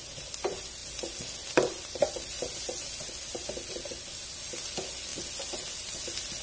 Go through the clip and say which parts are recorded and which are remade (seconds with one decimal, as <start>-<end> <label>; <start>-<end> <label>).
0.0-6.4 recorded